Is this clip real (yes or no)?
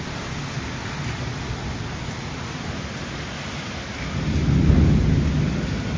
yes